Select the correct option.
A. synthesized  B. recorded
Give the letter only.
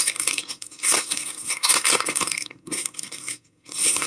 A